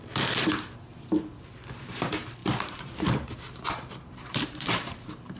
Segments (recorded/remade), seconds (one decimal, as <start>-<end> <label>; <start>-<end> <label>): 0.0-2.4 recorded; 2.4-5.4 remade